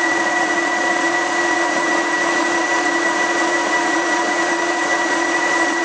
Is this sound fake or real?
fake